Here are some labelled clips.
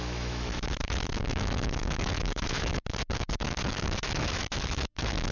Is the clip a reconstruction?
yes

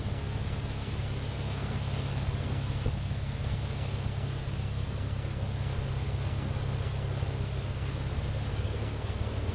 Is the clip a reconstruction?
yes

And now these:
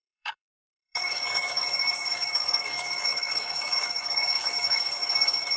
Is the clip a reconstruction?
yes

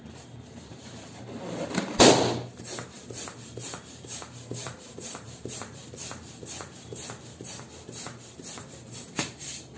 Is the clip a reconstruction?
yes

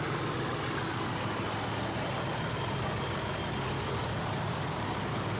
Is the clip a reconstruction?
no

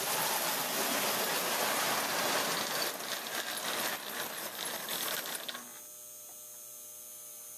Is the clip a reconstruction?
no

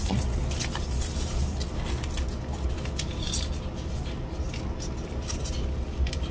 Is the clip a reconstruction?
no